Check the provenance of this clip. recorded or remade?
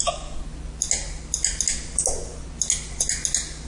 recorded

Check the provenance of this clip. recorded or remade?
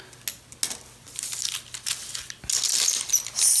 recorded